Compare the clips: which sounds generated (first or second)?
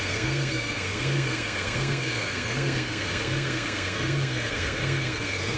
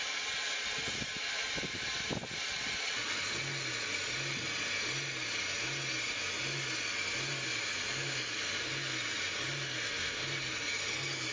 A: first